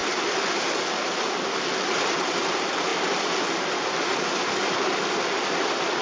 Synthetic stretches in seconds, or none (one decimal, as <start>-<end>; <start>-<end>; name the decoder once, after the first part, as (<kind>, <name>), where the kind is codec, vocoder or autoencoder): 1.2-6.0 (vocoder, BigVGAN v2)